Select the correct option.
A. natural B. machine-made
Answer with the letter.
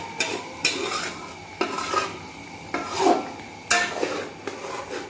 A